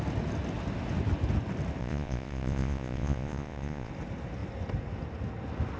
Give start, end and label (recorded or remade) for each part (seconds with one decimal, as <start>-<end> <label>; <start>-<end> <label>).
0.0-1.8 recorded; 1.8-3.9 remade; 3.9-5.8 recorded